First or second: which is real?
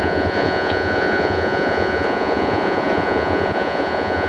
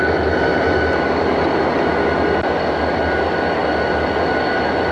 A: second